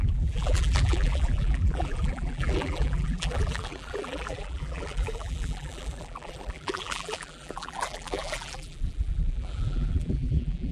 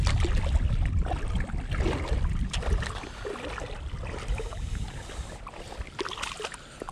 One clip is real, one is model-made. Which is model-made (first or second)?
first